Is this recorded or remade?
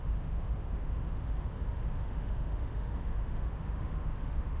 remade